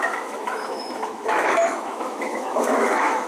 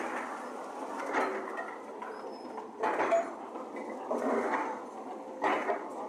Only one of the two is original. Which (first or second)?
second